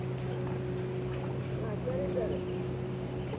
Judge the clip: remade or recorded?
recorded